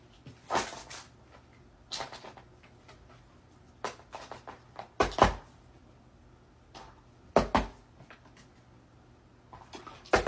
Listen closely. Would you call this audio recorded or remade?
recorded